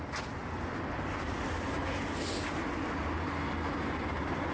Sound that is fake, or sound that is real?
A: real